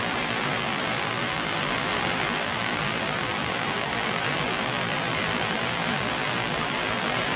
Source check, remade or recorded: remade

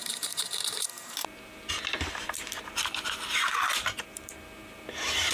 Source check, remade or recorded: remade